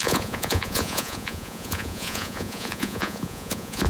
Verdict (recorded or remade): remade